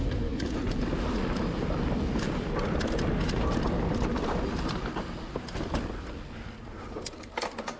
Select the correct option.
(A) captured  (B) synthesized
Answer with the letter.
A